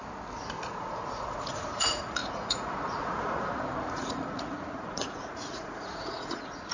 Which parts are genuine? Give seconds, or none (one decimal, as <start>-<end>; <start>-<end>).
0.0-0.6